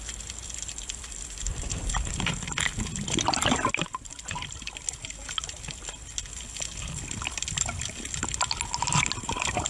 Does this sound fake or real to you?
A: real